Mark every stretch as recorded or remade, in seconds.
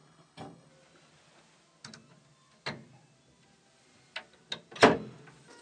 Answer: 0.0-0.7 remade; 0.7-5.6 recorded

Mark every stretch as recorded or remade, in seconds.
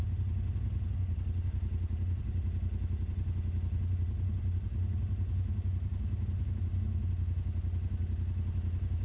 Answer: 0.0-9.0 recorded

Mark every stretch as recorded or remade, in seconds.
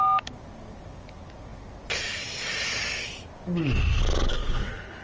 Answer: 0.0-4.3 recorded; 4.3-5.0 remade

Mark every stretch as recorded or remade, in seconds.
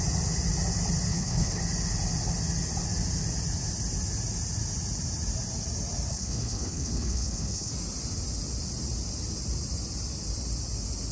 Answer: 0.0-1.1 recorded; 1.1-1.6 remade; 1.6-6.1 recorded; 6.1-7.7 remade; 7.7-11.1 recorded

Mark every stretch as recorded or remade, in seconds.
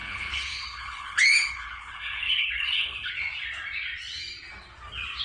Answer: 0.0-3.1 remade; 3.1-5.2 recorded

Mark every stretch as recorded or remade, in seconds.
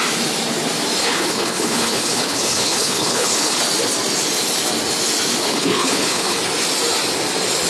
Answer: 0.0-1.0 recorded; 1.0-3.6 remade; 3.6-5.4 recorded; 5.4-6.4 remade; 6.4-7.7 recorded